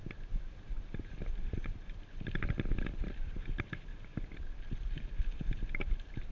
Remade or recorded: remade